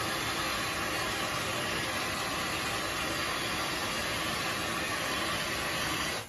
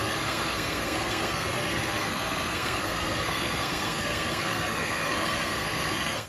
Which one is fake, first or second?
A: second